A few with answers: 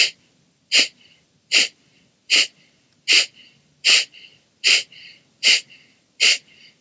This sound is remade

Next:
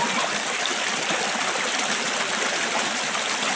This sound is recorded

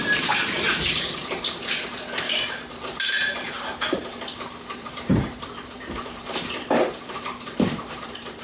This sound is remade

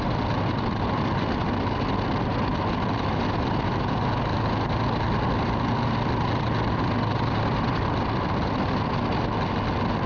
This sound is recorded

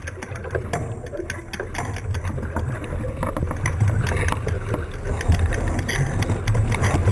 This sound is recorded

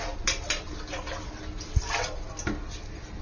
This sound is recorded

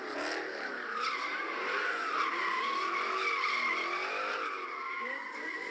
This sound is recorded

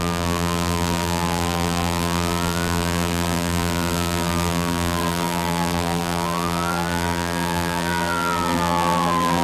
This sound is remade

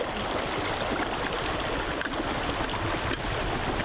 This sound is recorded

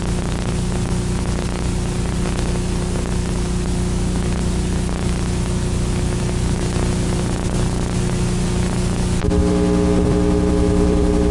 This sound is recorded